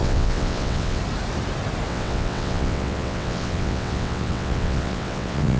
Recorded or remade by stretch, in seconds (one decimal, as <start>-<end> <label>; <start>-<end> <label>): 0.0-1.0 remade; 1.0-1.9 recorded; 1.9-5.6 remade